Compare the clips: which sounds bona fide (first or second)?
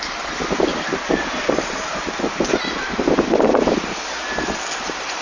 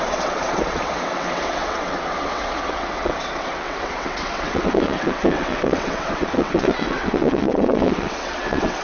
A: first